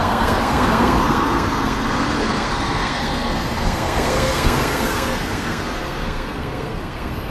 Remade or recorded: remade